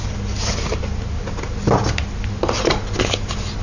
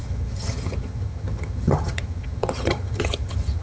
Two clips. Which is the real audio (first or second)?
first